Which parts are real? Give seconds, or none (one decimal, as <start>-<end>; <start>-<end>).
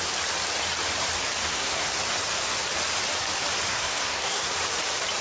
0.0-1.5; 2.0-3.7; 4.5-5.2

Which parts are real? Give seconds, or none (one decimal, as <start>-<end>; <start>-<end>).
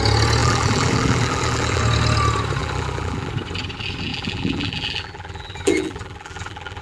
0.0-0.4; 1.8-2.6; 3.3-4.1